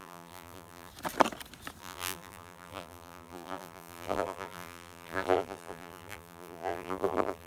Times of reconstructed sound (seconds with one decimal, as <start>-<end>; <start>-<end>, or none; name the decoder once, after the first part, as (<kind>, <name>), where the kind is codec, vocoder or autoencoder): 0.0-0.9 (vocoder, BigVGAN v2); 1.8-7.5